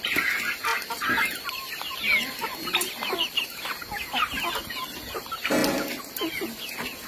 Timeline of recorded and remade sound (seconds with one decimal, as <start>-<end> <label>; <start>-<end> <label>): 0.0-0.7 recorded; 0.7-3.7 remade; 3.7-7.1 recorded